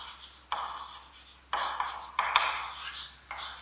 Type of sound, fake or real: real